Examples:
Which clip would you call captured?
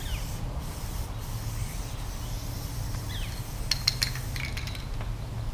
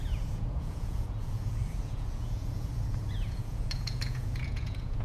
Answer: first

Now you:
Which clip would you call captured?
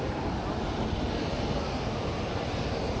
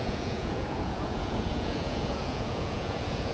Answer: first